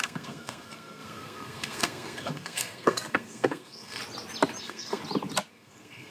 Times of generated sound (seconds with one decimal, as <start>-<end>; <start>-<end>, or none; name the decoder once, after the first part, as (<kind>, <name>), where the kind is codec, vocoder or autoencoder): 0.0-4.0 (codec, SNAC); 4.6-5.0; 5.5-6.1